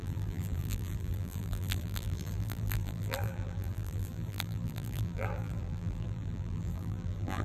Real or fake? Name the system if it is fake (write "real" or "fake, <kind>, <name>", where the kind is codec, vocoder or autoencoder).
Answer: fake, vocoder, BigVGAN v2